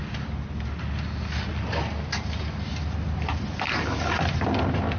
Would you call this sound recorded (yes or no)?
yes